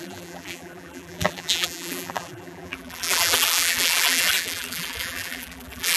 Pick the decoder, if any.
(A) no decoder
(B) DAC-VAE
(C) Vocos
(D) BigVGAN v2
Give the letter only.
D